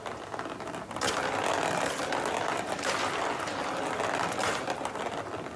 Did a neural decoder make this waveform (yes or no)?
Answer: no